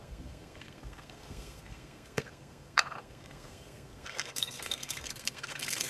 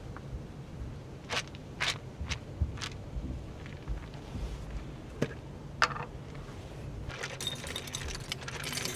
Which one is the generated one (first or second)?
first